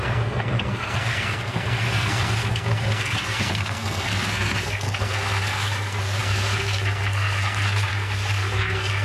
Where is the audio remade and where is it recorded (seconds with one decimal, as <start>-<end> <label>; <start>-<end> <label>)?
0.0-9.0 remade